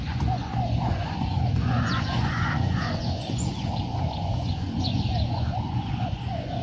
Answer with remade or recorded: remade